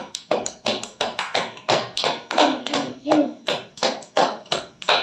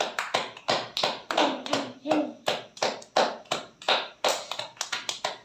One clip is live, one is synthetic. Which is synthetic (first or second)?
first